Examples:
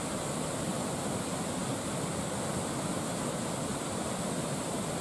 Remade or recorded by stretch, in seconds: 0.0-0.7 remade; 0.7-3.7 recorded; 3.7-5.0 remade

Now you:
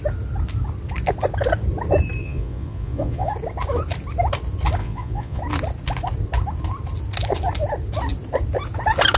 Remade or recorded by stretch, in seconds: 0.0-2.2 recorded; 2.2-3.3 remade; 3.3-4.8 recorded; 4.8-5.4 remade; 5.4-9.2 recorded